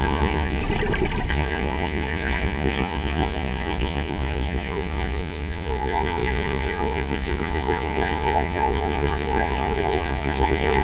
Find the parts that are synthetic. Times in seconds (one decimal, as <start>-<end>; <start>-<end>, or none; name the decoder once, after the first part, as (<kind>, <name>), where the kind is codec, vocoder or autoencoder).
0.0-0.6 (vocoder, Vocos); 1.3-10.8